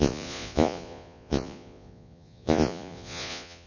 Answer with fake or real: fake